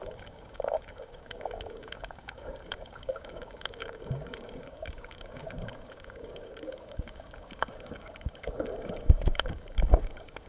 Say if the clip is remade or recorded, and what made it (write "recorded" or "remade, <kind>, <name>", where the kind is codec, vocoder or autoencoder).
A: remade, codec, DAC